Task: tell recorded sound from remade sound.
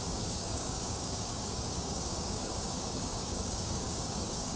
remade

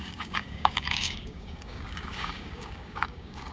remade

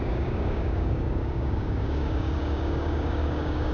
remade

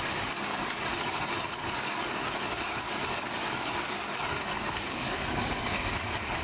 remade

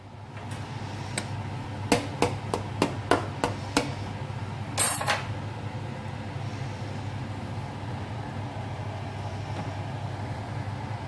recorded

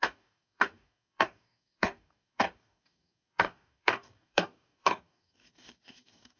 remade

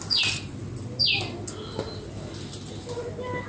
recorded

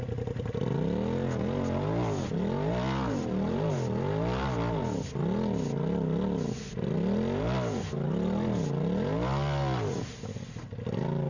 recorded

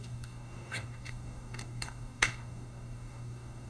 remade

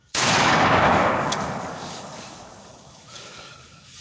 remade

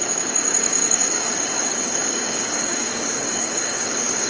remade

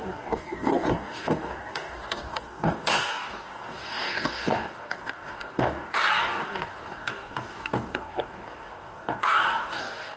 remade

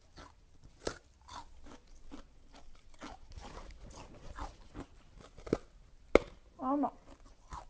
recorded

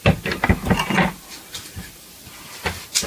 recorded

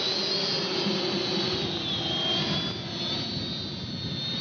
recorded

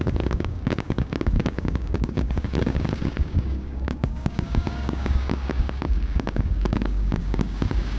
remade